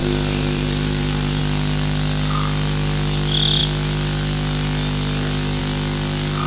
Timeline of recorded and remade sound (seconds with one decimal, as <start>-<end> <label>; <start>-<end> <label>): 0.0-1.4 remade; 1.4-6.5 recorded